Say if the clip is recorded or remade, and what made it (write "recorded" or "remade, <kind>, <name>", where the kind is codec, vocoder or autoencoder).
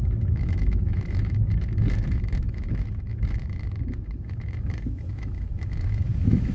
remade, autoencoder, DAC-VAE